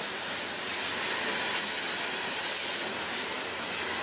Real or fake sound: real